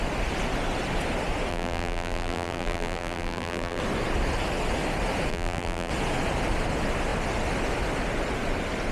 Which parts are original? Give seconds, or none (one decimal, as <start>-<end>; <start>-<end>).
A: 0.0-1.5; 3.8-5.3; 5.9-8.9